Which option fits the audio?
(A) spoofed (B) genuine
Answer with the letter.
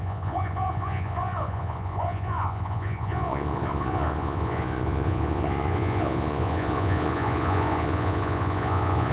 A